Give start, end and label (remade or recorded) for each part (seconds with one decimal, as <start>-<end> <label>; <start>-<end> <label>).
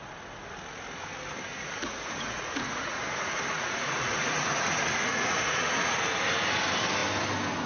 0.0-1.5 recorded; 1.5-6.1 remade; 6.1-7.7 recorded